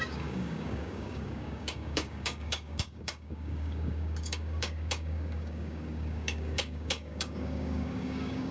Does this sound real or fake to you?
fake